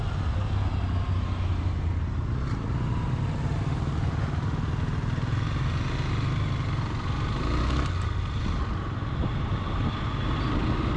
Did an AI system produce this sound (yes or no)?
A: no